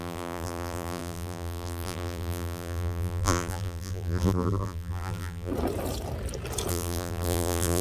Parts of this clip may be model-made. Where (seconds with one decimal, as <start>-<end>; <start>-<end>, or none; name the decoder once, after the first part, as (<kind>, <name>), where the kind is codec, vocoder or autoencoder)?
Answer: 0.0-5.5 (vocoder, BigVGAN v2); 6.7-7.8